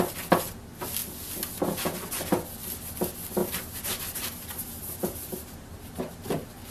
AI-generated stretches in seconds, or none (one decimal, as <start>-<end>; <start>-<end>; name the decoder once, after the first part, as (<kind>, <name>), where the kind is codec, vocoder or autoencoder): 3.4-6.0 (vocoder, BigVGAN v2)